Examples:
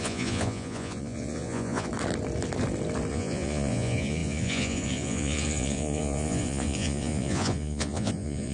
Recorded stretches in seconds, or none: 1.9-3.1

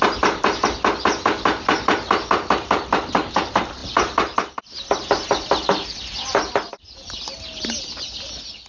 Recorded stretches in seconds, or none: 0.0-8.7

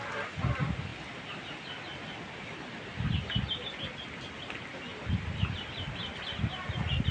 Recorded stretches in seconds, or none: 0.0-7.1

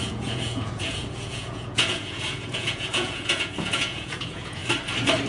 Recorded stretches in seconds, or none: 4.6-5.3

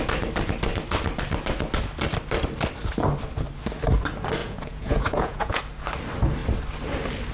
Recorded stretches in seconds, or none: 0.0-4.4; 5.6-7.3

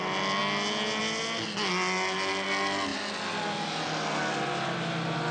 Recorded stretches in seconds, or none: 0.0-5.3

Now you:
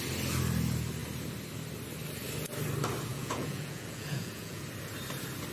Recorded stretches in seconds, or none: 0.0-3.1; 4.6-5.5

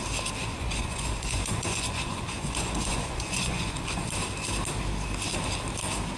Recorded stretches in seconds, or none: 0.0-0.4; 4.1-6.2